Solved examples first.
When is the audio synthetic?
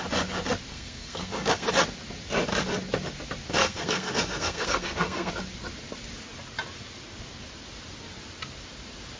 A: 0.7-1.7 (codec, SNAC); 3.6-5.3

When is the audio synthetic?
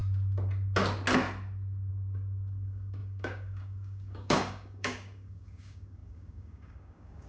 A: 1.9-7.3 (codec, DAC)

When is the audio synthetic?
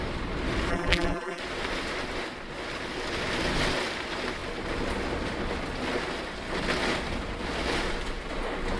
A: 0.7-1.4 (vocoder, BigVGAN v2)